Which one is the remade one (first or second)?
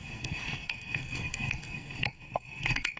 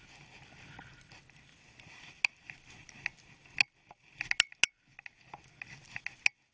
first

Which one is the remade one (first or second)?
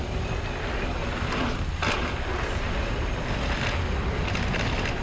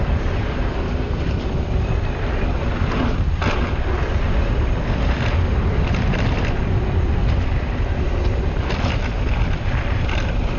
second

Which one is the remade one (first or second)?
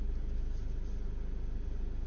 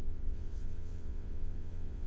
second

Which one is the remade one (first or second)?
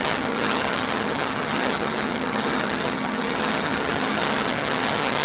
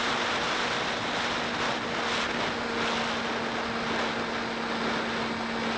first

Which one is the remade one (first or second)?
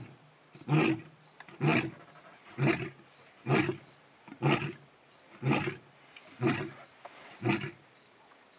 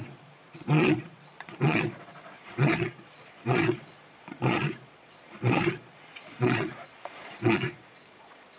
second